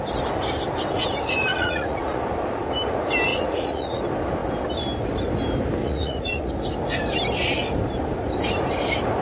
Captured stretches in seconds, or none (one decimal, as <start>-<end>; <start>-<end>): 0.0-1.5; 2.2-3.3; 4.0-5.8; 6.5-9.2